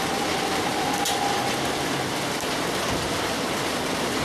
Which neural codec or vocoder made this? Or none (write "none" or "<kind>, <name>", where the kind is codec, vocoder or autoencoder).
none